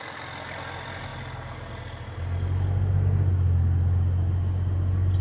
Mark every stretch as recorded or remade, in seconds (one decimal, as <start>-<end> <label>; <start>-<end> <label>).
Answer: 0.0-5.2 recorded